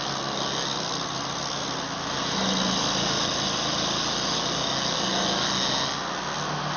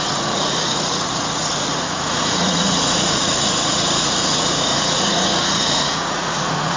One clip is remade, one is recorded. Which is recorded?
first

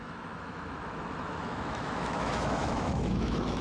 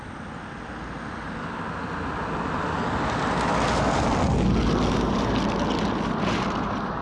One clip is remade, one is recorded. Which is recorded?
second